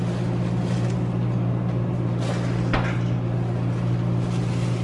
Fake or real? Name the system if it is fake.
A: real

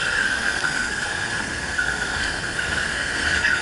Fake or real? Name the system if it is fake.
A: fake, codec, SNAC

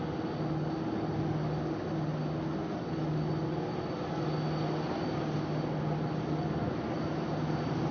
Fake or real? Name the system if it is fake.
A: real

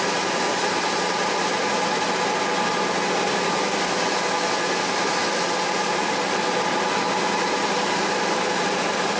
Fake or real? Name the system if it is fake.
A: real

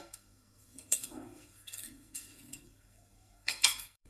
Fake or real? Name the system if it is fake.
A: fake, codec, SNAC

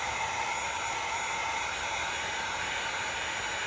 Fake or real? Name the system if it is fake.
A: real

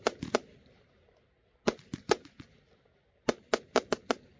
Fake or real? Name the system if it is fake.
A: real